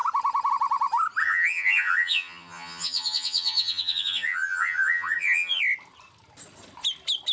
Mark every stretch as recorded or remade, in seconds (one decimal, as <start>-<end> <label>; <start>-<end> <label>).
0.0-1.2 recorded; 1.2-5.6 remade; 5.6-7.3 recorded